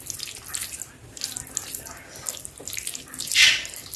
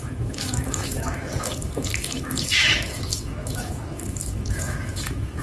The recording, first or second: first